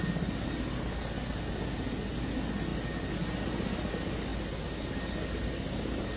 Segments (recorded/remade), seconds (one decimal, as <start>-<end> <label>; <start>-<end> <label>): 0.0-6.2 recorded